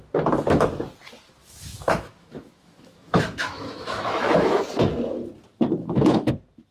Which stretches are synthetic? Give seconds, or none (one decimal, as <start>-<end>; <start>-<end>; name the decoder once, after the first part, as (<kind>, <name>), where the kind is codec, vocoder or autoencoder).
1.4-4.6 (autoencoder, DAC-VAE); 5.8-6.3